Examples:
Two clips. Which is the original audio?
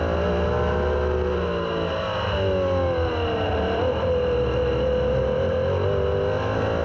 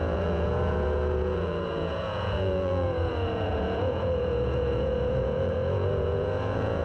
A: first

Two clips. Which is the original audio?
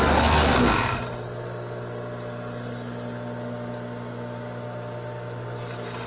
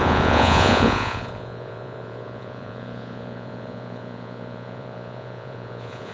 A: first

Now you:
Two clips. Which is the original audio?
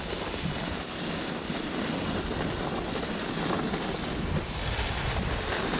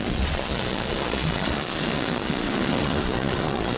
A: first